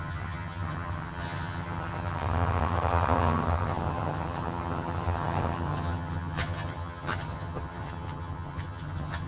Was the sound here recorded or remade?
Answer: remade